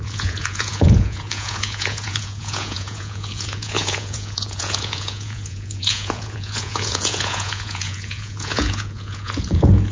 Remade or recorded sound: remade